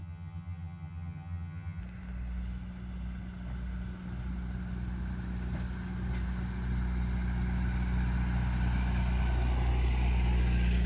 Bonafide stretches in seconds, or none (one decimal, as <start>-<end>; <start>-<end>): 1.8-10.9

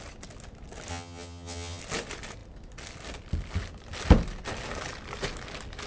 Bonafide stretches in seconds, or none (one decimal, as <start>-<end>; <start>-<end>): 0.0-0.9; 1.8-5.9

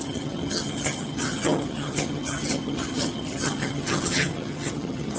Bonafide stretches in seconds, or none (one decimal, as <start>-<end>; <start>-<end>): none